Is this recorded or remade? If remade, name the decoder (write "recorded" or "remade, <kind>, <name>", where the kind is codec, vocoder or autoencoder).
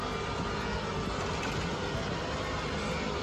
recorded